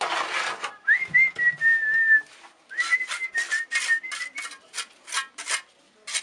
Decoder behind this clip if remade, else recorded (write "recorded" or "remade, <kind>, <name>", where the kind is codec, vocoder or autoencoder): recorded